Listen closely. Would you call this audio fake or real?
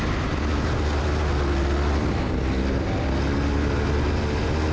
real